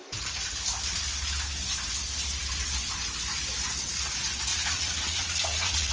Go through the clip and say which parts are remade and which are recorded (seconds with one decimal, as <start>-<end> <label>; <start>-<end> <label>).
0.0-4.5 recorded; 4.5-5.9 remade